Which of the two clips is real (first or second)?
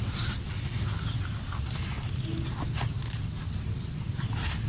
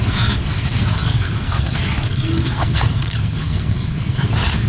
first